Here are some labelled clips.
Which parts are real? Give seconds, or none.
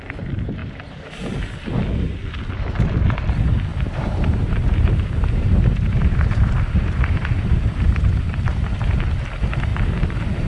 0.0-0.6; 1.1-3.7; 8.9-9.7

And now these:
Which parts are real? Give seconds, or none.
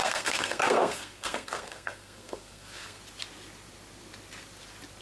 3.0-5.0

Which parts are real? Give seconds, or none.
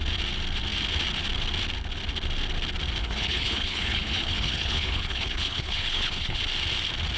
0.0-3.0; 6.4-7.2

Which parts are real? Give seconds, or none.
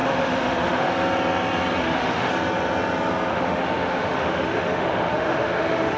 0.9-1.8; 2.3-3.3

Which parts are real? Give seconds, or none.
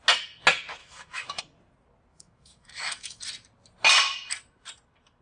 0.0-0.8; 1.4-2.1; 3.2-5.2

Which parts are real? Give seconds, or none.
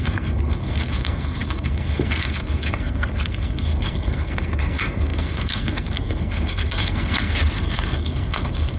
none